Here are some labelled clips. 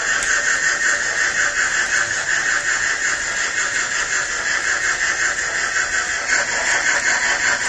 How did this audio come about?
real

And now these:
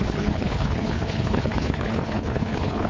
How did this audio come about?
fake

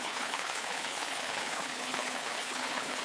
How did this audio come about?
fake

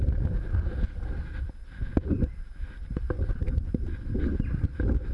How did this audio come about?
real